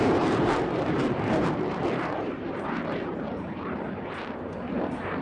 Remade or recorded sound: remade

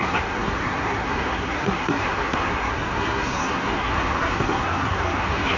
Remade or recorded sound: remade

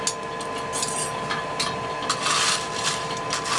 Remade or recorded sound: recorded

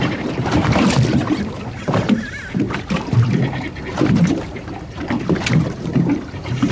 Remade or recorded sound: remade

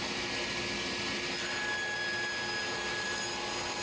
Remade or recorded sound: recorded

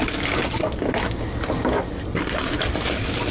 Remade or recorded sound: recorded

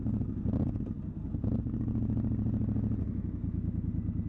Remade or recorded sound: recorded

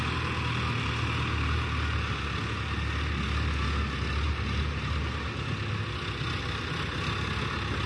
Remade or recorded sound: recorded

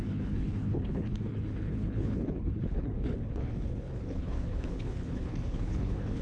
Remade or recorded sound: remade